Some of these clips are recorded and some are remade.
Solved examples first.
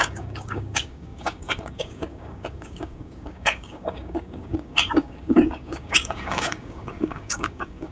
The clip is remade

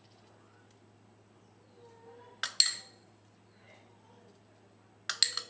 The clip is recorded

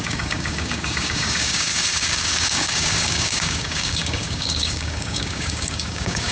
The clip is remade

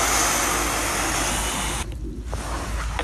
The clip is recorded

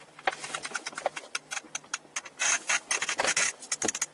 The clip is recorded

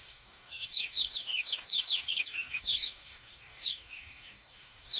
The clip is remade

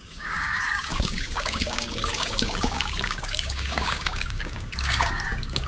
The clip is remade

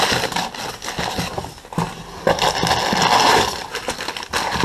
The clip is recorded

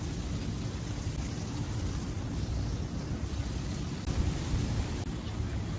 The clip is recorded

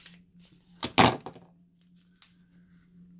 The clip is recorded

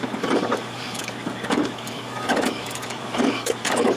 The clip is remade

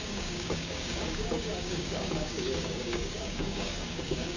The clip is remade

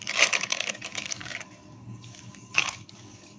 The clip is remade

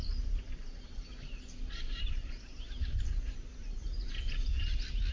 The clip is recorded